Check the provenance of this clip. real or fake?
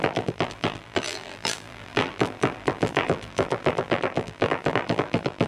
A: fake